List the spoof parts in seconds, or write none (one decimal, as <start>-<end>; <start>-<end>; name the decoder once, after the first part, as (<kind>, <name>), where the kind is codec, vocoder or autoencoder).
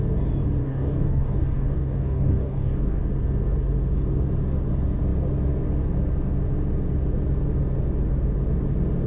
0.6-3.0 (codec, DAC)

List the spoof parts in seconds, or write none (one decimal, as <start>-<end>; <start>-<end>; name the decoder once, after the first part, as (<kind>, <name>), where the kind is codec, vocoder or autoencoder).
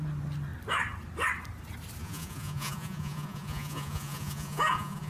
2.0-5.1 (vocoder, Vocos)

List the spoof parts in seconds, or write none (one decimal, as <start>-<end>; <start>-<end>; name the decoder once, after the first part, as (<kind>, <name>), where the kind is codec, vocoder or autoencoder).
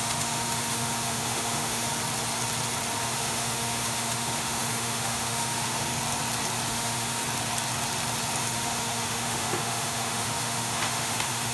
0.0-1.9 (autoencoder, DAC-VAE); 3.0-5.9; 6.7-7.2; 8.4-11.5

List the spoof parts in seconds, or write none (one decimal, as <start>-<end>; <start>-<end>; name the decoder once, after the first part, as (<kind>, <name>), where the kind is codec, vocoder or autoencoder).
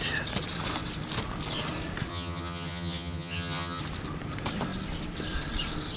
2.1-3.8 (vocoder, HiFi-GAN)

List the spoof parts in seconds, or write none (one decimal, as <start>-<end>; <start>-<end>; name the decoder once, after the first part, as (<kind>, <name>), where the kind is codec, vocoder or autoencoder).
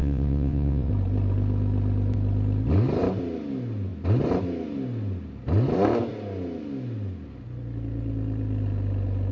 0.0-0.9 (vocoder, WaveNeXt)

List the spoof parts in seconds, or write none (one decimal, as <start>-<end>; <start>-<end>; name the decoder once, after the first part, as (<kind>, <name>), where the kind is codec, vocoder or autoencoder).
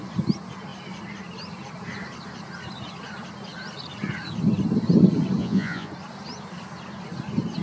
5.4-5.9 (vocoder, Vocos)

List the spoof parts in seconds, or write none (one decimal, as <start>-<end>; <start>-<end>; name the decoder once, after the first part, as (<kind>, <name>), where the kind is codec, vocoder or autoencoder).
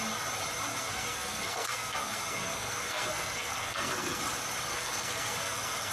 0.7-4.2 (codec, SNAC); 4.7-5.9